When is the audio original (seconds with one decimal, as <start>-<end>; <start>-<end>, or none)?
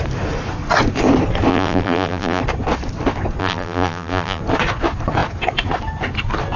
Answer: 0.0-1.5; 2.4-3.4; 4.4-6.6